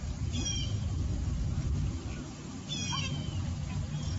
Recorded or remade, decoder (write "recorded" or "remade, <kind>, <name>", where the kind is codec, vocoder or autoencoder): recorded